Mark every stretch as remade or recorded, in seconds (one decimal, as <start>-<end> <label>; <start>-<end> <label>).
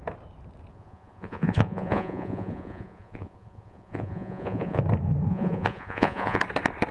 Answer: 0.0-0.7 recorded; 0.7-4.8 remade; 4.8-5.3 recorded; 5.3-6.4 remade; 6.4-6.9 recorded